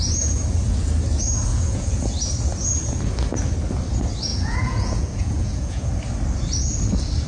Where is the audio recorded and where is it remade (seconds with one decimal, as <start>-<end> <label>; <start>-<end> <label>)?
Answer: 0.0-1.5 recorded; 1.5-2.0 remade; 2.0-4.3 recorded; 4.3-5.9 remade; 5.9-7.3 recorded